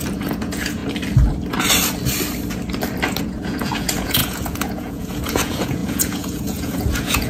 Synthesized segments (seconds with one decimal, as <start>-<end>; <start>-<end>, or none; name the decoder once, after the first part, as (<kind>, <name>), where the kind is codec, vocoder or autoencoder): 0.0-0.8 (vocoder, Vocos); 3.2-7.3